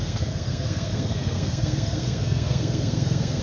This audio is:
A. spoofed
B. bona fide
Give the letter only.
A